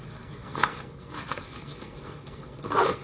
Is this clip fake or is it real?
fake